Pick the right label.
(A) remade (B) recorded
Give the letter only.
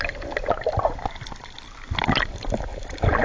B